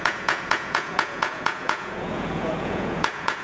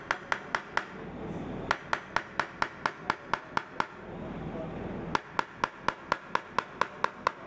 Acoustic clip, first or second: second